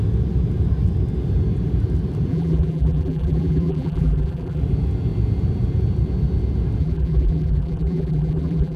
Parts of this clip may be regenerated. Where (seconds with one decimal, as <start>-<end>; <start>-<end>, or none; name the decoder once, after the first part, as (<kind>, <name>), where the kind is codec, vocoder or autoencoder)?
2.3-4.6 (vocoder, BigVGAN v2); 6.8-8.8

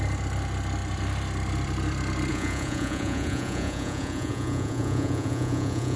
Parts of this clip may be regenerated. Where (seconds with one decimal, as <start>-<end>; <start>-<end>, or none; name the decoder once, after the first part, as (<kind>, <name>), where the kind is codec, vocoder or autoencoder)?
2.3-6.0 (vocoder, Vocos)

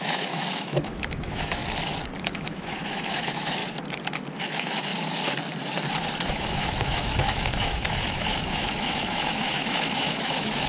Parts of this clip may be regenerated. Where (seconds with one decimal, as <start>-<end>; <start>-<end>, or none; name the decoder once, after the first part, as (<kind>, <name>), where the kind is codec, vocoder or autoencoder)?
0.0-1.6 (autoencoder, DAC-VAE); 2.2-3.6; 4.4-4.9; 6.3-10.7